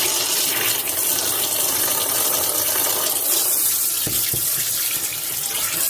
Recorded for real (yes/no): yes